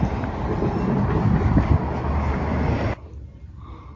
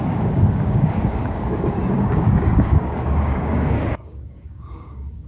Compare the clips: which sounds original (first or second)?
first